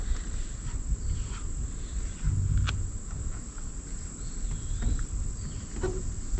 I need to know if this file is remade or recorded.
recorded